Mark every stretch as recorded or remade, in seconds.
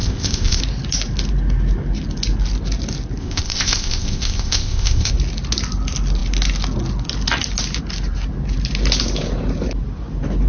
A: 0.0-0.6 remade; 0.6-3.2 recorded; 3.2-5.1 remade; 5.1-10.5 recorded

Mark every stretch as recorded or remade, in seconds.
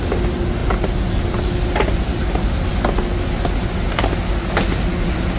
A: 0.0-5.4 recorded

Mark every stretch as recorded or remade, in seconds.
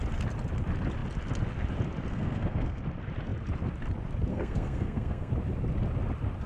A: 0.0-2.1 recorded; 2.1-2.8 remade; 2.8-4.3 recorded; 4.3-5.3 remade; 5.3-6.5 recorded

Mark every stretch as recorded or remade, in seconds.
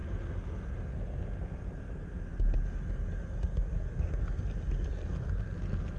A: 0.0-6.0 recorded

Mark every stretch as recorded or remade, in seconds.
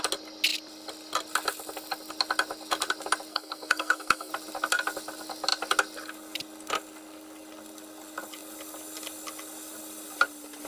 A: 0.0-3.3 recorded; 3.3-4.3 remade; 4.3-10.7 recorded